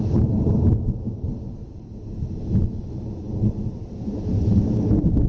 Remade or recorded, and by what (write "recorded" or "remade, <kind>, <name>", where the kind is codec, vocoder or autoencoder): recorded